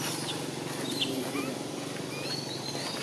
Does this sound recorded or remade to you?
recorded